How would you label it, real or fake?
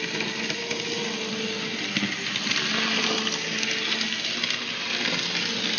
real